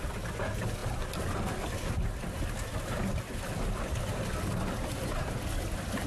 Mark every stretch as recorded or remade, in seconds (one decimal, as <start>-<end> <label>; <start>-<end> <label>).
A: 0.0-6.1 recorded